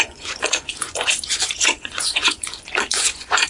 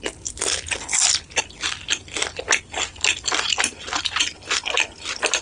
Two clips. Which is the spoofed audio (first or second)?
first